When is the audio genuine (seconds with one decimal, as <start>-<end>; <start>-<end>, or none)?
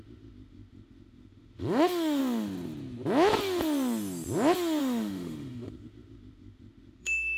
2.2-4.8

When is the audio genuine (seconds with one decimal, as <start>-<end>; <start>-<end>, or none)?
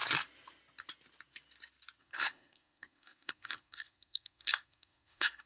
0.0-2.0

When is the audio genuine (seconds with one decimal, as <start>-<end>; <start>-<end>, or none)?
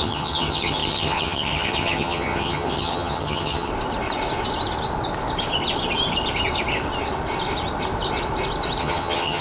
3.7-8.8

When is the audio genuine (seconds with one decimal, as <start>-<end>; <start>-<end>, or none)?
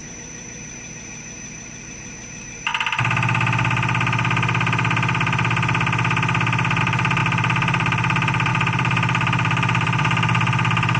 2.7-6.8